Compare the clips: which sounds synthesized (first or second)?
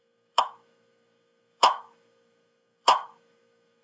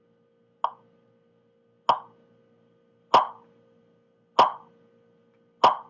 first